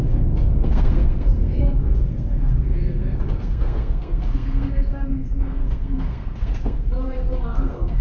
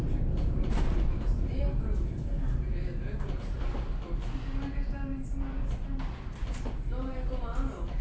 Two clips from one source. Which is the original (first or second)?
second